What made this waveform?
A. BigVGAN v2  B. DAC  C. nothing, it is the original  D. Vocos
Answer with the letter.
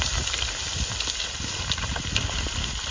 A